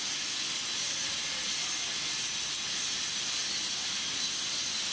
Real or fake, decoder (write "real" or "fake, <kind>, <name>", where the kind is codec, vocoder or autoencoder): real